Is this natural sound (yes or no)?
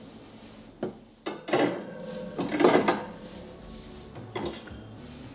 yes